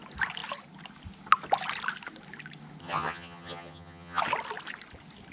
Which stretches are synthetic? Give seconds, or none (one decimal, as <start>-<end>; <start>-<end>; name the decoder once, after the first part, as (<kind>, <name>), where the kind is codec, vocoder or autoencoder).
2.8-4.2 (vocoder, HiFi-GAN)

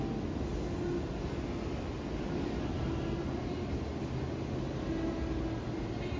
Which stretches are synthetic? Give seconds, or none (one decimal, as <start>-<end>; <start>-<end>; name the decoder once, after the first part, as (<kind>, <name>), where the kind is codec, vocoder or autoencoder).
none

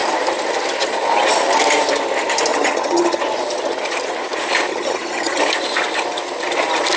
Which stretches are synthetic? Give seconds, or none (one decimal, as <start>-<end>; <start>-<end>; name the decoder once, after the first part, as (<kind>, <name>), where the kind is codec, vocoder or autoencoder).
2.5-3.2 (vocoder, HiFi-GAN); 4.7-5.4